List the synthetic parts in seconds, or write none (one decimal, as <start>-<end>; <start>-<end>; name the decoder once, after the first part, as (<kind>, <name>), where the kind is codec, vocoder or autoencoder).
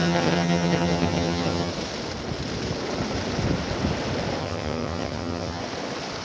0.0-1.7 (vocoder, HiFi-GAN); 4.4-5.6